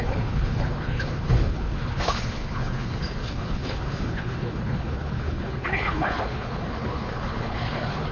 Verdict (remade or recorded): remade